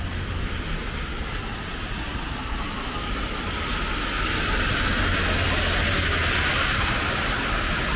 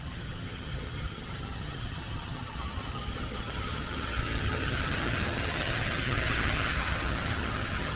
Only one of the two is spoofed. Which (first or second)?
second